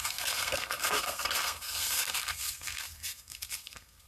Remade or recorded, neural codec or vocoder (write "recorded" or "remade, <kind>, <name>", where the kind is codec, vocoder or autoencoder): remade, codec, SNAC